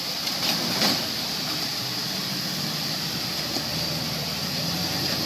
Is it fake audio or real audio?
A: fake